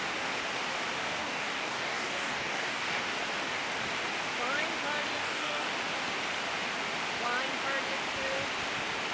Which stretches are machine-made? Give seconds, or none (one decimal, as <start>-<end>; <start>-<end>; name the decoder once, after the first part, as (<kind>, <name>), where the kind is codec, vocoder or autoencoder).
1.2-3.1 (codec, DAC); 5.2-5.7